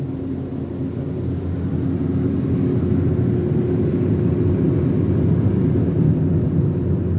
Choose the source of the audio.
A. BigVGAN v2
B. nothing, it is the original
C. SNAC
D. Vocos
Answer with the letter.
B